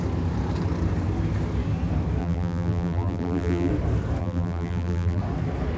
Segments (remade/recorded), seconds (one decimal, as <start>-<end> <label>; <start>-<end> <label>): 0.0-2.2 recorded; 2.2-3.7 remade; 3.7-4.2 recorded; 4.2-5.2 remade; 5.2-5.8 recorded